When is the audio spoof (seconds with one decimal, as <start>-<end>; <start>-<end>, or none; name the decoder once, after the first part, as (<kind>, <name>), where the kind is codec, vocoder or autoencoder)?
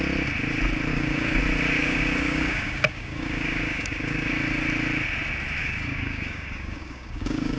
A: 0.9-1.4 (codec, DAC); 1.8-4.3; 5.6-7.6